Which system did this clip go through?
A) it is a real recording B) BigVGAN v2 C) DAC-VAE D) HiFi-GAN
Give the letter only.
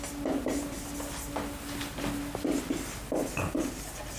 A